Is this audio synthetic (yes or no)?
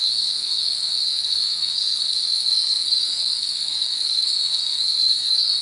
yes